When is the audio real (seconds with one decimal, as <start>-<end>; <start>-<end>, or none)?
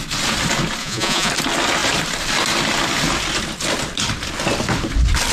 0.0-0.8; 1.3-5.3